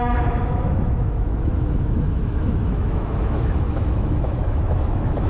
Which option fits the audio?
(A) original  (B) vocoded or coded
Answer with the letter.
B